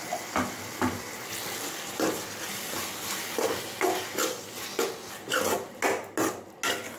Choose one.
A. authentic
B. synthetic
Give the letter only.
A